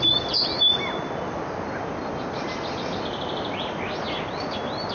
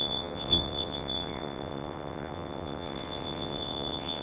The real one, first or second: first